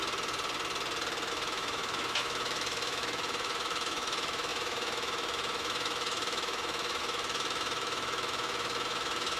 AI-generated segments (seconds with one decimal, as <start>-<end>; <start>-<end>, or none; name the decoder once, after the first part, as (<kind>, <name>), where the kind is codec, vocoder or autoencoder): 1.3-9.4 (autoencoder, DAC-VAE)